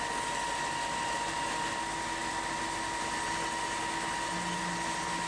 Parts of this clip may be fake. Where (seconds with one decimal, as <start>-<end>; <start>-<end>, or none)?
none